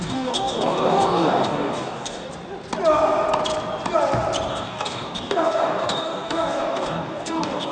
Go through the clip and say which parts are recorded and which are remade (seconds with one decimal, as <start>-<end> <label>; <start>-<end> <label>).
0.0-2.3 remade; 2.3-4.5 recorded; 4.5-7.7 remade